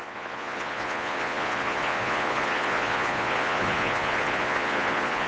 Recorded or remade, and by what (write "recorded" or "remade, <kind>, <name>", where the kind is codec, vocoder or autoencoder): remade, vocoder, Vocos